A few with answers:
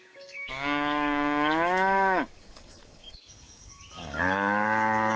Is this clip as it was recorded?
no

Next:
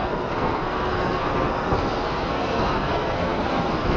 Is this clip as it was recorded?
no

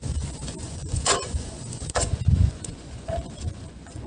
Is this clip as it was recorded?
no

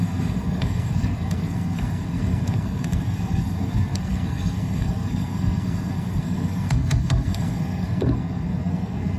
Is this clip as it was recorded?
no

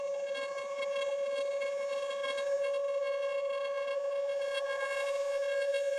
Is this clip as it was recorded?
no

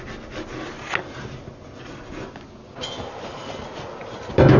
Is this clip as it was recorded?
yes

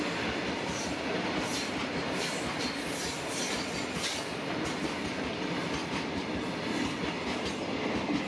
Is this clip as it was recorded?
yes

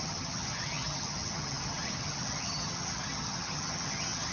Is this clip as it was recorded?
no